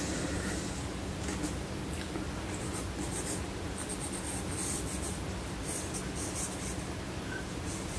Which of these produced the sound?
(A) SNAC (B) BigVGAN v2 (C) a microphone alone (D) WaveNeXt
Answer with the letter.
C